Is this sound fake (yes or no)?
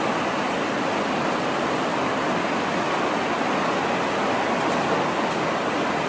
no